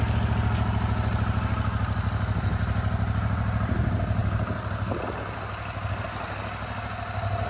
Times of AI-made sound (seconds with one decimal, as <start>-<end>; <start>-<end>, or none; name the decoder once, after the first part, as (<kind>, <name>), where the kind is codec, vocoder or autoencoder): none